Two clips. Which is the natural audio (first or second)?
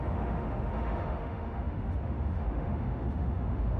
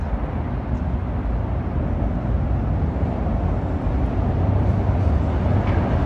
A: second